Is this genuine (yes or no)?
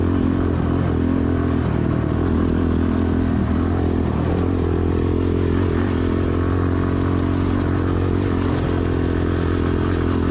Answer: yes